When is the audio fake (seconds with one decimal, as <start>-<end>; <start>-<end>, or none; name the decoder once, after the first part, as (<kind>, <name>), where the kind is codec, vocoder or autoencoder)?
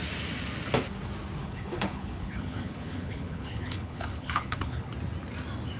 1.4-4.9 (codec, HILCodec)